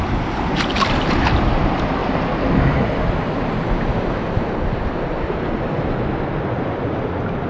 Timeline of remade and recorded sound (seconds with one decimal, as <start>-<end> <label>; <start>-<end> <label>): 0.0-7.5 recorded